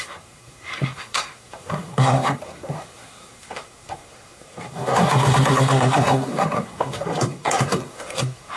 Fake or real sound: fake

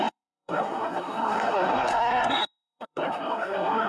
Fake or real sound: fake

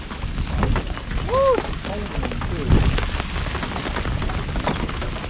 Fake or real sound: real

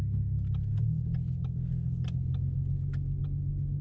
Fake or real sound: real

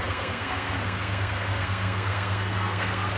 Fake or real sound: fake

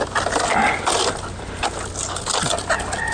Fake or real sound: real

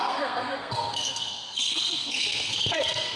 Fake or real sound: fake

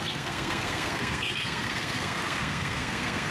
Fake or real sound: fake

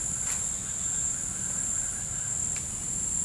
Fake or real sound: real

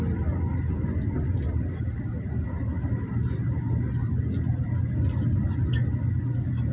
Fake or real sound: real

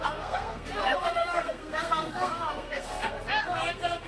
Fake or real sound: fake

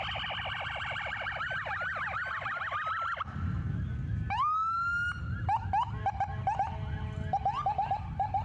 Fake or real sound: real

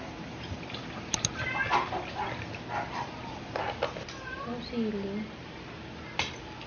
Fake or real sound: real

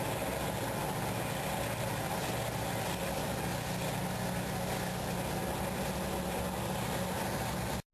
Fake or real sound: real